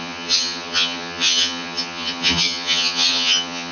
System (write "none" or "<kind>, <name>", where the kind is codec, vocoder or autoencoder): vocoder, HiFi-GAN